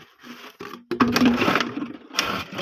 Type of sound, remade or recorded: recorded